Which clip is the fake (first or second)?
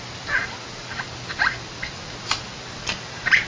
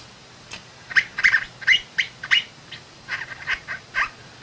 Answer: second